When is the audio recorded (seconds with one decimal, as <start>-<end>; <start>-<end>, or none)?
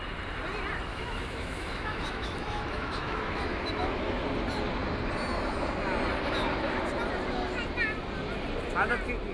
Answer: 0.0-0.9; 4.2-9.3